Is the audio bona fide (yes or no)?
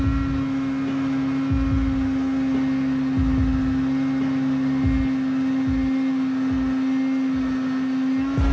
yes